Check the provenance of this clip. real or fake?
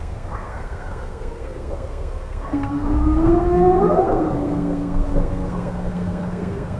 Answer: fake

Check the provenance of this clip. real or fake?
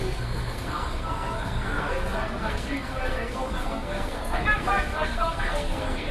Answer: fake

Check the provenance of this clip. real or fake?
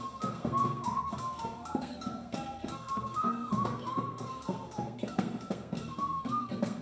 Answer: fake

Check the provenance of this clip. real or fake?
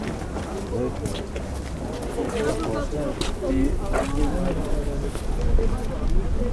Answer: real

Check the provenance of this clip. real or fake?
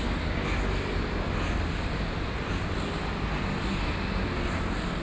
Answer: real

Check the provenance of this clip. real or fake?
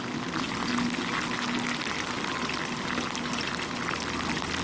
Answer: real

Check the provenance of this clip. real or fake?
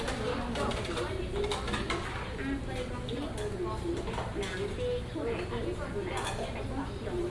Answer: real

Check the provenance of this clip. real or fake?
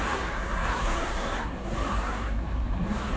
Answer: fake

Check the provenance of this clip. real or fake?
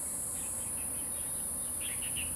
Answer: real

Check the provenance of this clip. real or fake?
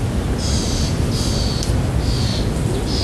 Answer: real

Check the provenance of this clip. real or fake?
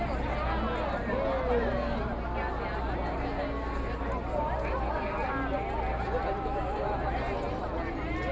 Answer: real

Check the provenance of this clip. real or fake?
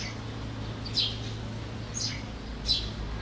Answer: real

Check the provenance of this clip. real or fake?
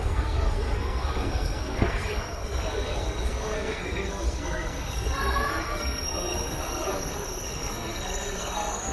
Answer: fake